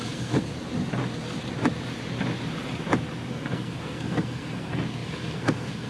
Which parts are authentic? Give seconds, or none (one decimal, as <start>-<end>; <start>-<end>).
0.5-3.3